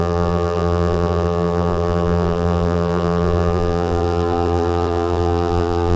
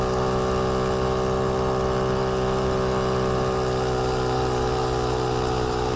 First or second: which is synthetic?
first